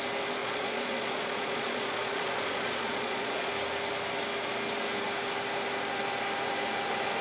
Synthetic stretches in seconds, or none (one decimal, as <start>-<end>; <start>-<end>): 0.4-3.5